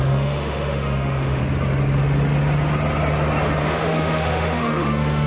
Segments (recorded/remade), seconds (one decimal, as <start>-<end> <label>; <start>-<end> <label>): 0.0-1.4 remade; 1.4-3.6 recorded; 3.6-5.3 remade